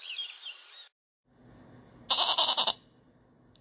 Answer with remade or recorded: recorded